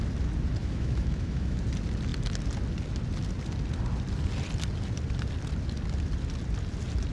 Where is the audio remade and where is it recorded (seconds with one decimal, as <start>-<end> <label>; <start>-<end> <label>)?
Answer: 0.0-0.6 recorded; 0.6-1.6 remade; 1.6-7.1 recorded